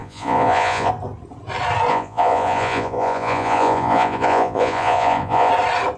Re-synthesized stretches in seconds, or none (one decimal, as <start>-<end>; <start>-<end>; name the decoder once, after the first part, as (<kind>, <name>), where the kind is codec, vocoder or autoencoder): 0.0-0.9 (vocoder, Vocos); 1.9-5.5